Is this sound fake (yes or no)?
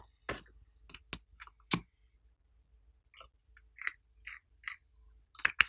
no